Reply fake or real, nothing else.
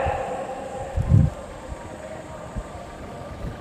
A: fake